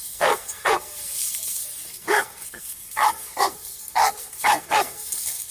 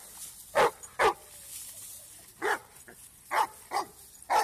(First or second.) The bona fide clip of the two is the second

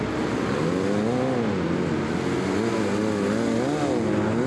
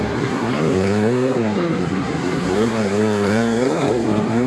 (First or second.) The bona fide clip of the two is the first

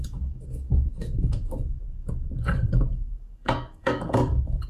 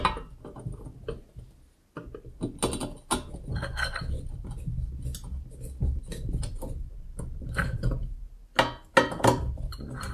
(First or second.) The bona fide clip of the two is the second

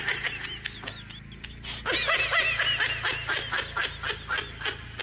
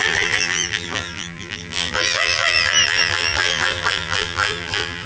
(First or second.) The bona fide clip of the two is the first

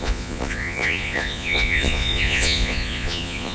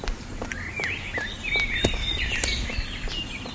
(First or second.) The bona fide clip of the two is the second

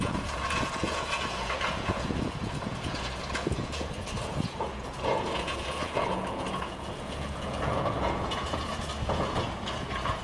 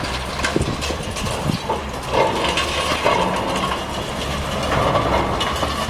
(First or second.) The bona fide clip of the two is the second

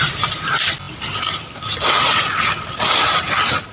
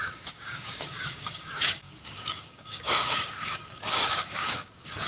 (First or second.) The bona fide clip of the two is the first